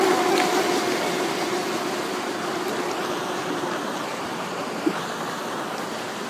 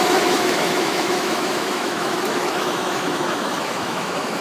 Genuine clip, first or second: first